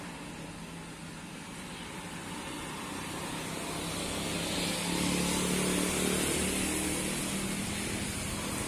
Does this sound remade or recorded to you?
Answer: recorded